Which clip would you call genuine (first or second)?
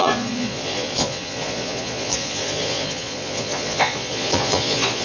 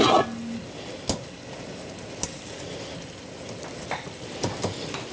second